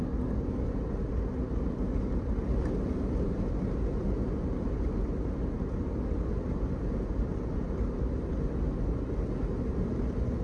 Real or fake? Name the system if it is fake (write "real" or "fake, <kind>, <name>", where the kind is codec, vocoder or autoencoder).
real